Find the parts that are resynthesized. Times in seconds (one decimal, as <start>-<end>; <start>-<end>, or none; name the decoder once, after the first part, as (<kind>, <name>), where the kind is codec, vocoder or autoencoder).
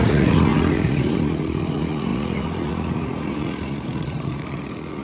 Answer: 0.0-5.0 (vocoder, Vocos)